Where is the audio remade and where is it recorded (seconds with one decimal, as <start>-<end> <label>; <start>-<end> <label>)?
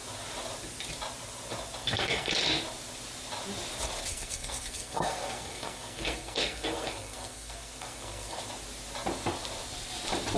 0.0-1.8 recorded; 1.8-2.3 remade; 2.3-4.1 recorded; 4.1-8.4 remade; 8.4-10.4 recorded